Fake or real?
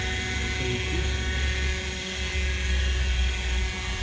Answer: real